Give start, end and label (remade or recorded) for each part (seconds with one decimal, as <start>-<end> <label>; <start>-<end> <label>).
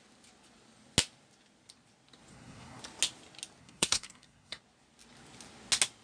0.0-2.3 recorded; 2.3-2.8 remade; 2.8-3.6 recorded; 3.6-4.6 remade; 4.6-6.0 recorded